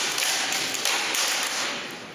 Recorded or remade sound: recorded